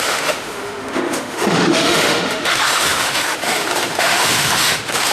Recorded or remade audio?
remade